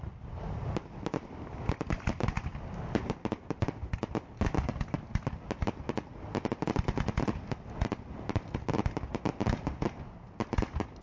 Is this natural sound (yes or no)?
yes